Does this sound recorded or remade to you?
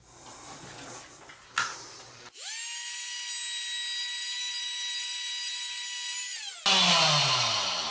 recorded